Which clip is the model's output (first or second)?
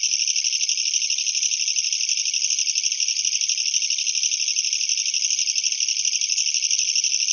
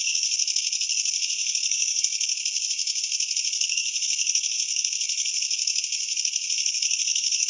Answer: second